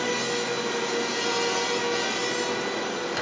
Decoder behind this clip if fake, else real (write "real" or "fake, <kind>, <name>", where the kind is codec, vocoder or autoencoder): real